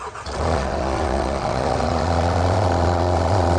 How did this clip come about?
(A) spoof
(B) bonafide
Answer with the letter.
A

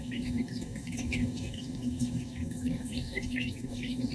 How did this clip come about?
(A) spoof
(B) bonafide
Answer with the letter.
A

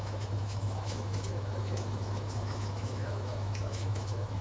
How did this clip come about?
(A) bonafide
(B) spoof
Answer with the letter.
B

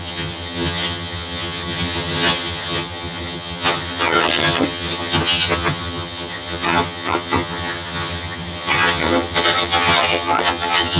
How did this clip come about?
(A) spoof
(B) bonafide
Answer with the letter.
A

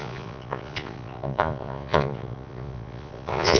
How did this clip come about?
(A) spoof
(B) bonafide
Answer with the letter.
A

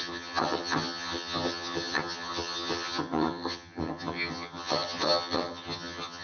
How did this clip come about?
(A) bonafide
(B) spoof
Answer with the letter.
B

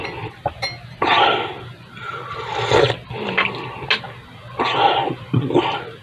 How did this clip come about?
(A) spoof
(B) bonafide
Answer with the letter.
B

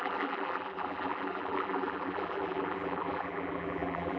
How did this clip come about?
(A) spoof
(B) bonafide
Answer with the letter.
A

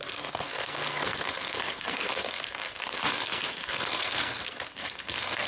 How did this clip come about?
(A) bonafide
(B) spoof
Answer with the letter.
B